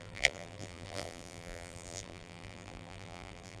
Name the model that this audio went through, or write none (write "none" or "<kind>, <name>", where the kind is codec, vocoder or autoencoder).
vocoder, BigVGAN v2